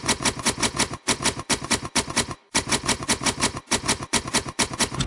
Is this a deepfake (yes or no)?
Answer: yes